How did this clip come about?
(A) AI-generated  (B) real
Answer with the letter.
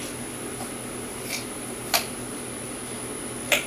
B